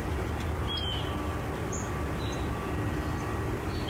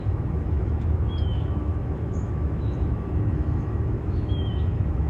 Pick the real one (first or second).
first